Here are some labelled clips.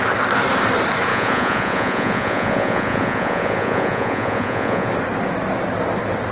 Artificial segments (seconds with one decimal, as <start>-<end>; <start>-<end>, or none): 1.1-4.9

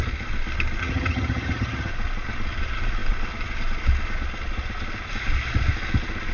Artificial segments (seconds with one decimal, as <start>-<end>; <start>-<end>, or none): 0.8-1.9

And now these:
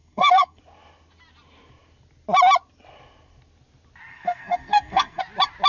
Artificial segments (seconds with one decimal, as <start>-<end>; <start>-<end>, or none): 0.0-0.6; 4.1-5.2